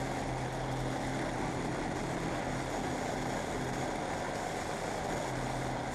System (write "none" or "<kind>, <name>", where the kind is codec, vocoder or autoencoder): none